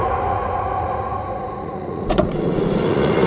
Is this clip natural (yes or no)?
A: no